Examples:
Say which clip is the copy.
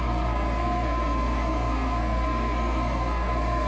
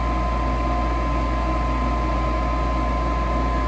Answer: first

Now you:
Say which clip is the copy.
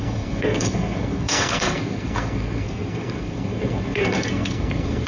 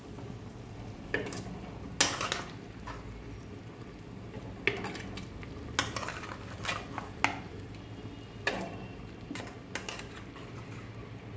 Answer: first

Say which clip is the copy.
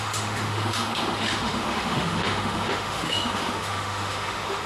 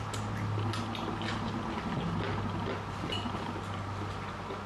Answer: first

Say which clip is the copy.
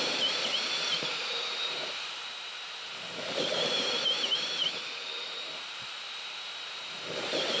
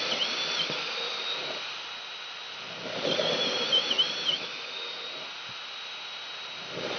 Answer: first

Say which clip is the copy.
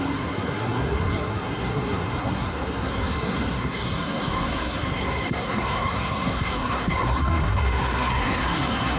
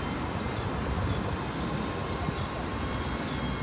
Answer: first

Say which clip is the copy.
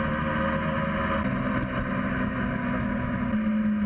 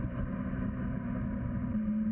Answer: second